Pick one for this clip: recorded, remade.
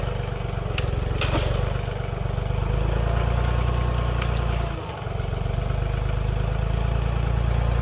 recorded